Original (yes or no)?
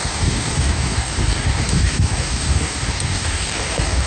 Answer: no